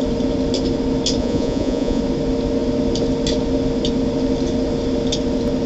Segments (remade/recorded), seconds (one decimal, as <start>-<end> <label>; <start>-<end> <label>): 0.0-1.2 recorded; 1.2-2.0 remade; 2.0-5.7 recorded